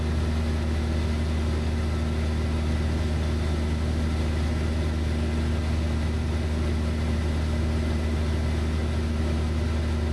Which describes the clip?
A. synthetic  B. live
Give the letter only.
B